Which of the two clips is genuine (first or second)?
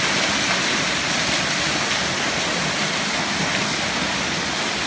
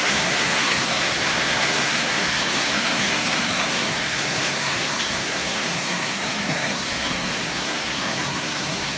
first